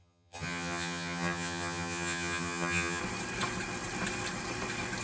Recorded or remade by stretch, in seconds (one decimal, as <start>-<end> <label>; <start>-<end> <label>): 0.0-3.0 remade; 3.0-5.0 recorded